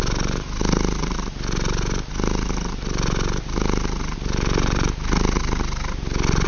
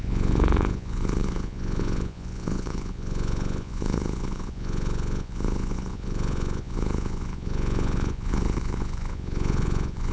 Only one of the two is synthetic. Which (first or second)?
second